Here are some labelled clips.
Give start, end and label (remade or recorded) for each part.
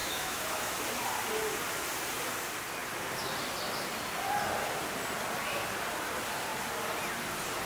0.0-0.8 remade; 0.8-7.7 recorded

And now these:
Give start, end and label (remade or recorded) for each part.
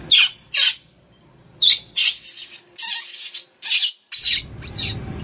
0.0-5.2 recorded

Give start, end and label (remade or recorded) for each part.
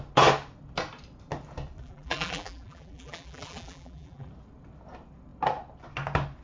0.0-1.8 recorded; 1.8-4.3 remade; 4.3-6.4 recorded